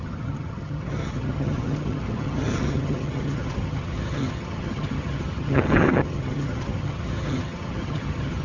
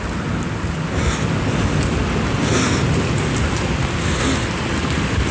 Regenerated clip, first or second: first